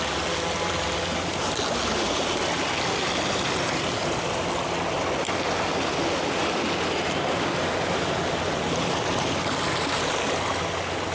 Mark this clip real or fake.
real